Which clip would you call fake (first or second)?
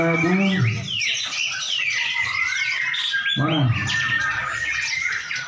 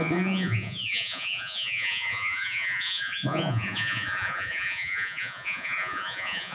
second